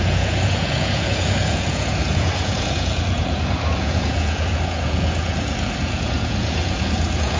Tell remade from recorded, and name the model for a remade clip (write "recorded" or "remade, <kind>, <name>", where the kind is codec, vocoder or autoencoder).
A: remade, vocoder, Vocos